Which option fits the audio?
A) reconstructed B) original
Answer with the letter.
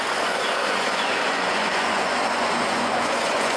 A